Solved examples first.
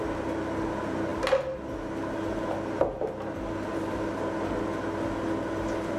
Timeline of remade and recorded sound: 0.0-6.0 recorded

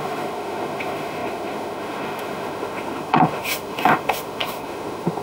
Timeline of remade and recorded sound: 0.0-5.2 remade

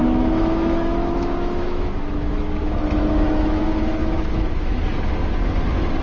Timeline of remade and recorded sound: 0.0-3.6 remade; 3.6-4.0 recorded; 4.0-4.8 remade; 4.8-6.0 recorded

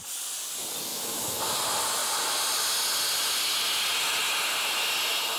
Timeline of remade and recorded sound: 0.0-0.9 recorded; 0.9-1.4 remade; 1.4-5.4 recorded

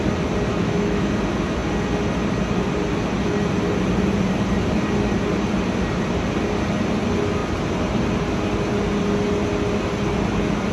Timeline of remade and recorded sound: 0.0-0.5 recorded; 0.5-1.1 remade; 1.1-10.7 recorded

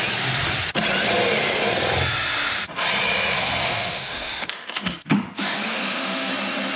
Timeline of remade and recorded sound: 0.0-3.6 recorded; 3.6-6.3 remade; 6.3-6.8 recorded